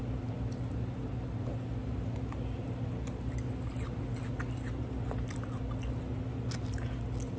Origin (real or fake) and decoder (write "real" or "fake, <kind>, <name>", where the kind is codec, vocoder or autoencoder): real